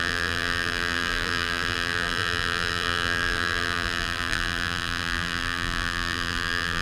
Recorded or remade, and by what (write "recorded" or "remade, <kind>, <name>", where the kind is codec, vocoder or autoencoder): remade, vocoder, BigVGAN v2